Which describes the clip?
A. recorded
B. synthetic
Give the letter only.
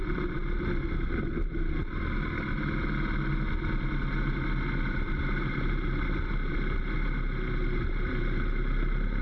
A